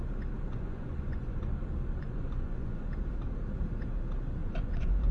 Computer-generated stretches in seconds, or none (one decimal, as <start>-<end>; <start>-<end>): 0.5-1.4; 2.0-2.9; 4.4-5.1